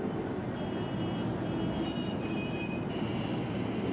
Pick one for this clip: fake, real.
real